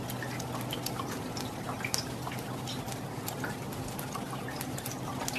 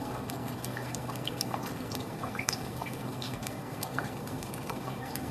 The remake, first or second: second